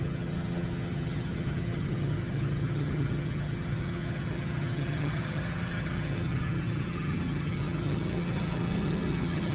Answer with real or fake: fake